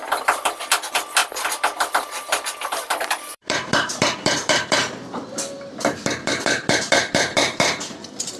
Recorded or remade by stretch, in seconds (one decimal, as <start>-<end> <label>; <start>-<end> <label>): 0.0-1.2 remade; 1.2-1.9 recorded; 1.9-8.4 remade